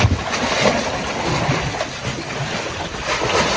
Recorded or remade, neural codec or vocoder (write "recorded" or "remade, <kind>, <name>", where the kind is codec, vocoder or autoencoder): recorded